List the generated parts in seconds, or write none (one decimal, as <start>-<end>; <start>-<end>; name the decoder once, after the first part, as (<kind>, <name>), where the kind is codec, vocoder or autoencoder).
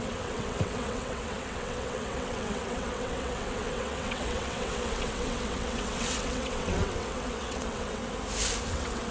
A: 0.0-8.0 (vocoder, WaveNeXt); 8.7-9.1